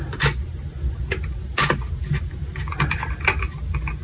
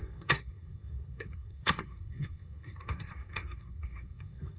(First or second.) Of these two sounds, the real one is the first